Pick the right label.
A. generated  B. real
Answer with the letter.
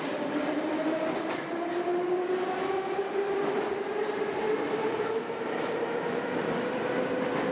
B